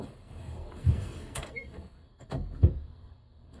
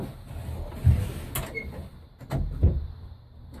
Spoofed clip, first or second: first